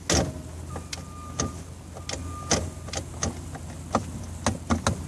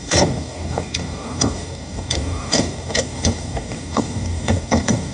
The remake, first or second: second